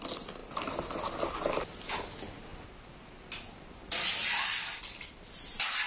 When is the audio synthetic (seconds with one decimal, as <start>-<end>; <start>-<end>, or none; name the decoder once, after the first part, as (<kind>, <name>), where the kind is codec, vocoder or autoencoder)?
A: none